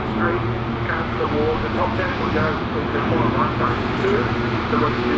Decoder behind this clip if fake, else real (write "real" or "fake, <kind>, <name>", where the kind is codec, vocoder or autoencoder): real